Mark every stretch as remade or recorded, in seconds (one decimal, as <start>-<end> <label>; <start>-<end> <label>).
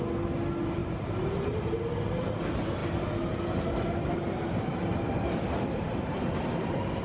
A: 0.0-0.8 recorded; 0.8-1.8 remade; 1.8-4.9 recorded; 4.9-7.0 remade